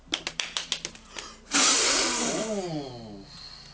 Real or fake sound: real